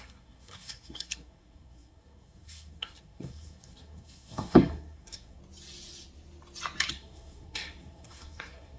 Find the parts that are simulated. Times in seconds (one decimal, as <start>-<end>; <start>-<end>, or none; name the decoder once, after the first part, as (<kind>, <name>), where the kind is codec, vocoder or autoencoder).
0.0-5.4 (codec, SNAC); 6.9-8.8